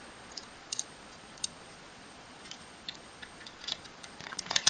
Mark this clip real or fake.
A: fake